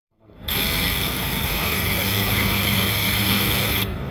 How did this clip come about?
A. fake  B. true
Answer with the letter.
A